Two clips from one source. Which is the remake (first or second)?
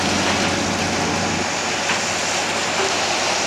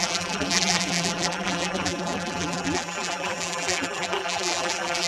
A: second